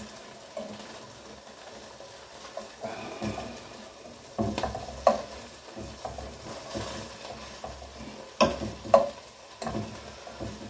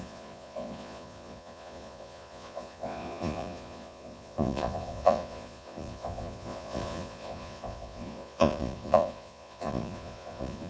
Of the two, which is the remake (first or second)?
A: second